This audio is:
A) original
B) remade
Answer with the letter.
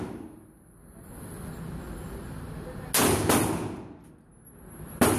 A